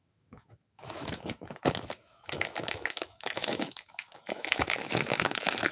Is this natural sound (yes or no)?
no